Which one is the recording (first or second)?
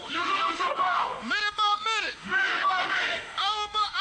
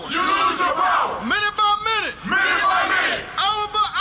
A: second